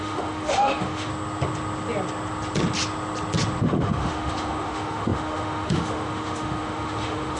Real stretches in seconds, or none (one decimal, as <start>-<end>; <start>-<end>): 1.1-3.6